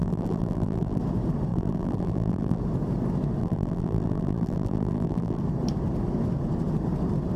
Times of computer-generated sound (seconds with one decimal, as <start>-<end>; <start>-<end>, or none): 0.0-1.0; 1.5-2.6; 3.4-5.4